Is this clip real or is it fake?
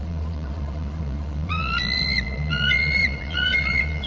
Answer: fake